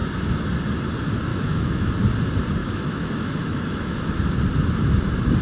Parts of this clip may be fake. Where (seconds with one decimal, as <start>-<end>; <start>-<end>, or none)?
1.3-1.9; 2.6-4.1